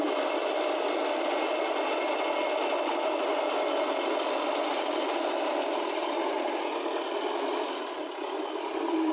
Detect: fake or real real